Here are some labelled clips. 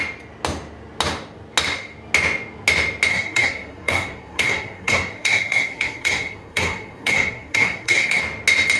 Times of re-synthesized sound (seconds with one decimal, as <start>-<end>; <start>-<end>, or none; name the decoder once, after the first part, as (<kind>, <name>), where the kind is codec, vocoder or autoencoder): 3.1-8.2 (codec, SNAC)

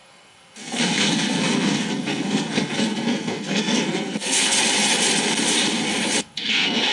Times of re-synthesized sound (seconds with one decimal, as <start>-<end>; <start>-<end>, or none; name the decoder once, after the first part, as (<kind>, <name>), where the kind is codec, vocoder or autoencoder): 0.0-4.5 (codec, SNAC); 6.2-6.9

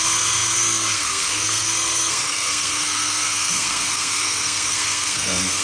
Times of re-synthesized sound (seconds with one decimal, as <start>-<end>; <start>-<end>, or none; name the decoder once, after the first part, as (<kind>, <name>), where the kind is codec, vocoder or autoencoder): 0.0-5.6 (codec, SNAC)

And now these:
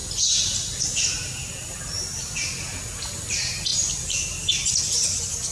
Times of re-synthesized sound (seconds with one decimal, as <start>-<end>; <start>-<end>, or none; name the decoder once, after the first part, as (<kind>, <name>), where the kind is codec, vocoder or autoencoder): none

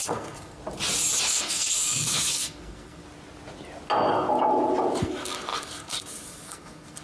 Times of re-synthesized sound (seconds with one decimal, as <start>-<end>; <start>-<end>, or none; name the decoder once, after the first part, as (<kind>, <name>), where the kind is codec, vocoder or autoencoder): 0.0-0.6 (codec, SNAC); 1.3-3.0; 5.0-7.0

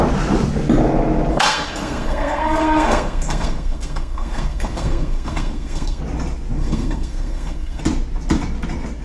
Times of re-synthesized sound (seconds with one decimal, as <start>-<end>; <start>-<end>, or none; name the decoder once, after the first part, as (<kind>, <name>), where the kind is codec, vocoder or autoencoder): 1.3-6.0 (codec, SNAC); 6.6-7.8